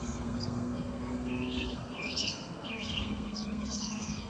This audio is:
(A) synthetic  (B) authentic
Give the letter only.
A